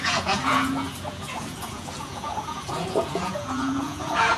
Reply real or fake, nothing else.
fake